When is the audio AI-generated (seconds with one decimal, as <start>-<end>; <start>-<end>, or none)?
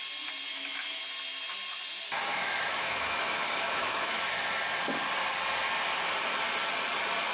0.5-1.0; 2.3-4.2